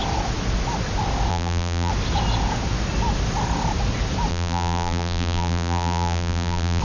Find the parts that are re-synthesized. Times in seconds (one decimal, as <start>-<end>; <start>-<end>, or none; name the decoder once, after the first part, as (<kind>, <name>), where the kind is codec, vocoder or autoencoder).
1.3-1.9 (vocoder, BigVGAN v2); 4.3-6.8

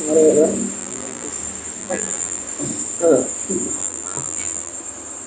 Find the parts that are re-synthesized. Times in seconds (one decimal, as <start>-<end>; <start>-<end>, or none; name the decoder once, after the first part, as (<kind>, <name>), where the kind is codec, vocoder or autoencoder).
0.8-1.3 (vocoder, BigVGAN v2); 1.8-2.4; 3.8-4.7

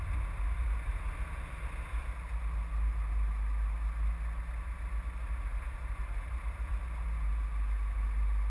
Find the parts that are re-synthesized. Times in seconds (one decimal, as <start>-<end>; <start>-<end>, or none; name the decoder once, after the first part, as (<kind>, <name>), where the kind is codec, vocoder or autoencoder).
5.5-6.7 (vocoder, BigVGAN v2)

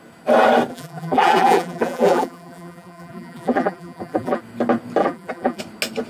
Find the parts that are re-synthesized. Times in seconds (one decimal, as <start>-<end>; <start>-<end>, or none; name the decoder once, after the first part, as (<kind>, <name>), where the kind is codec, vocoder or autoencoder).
0.7-4.4 (vocoder, BigVGAN v2); 5.0-5.6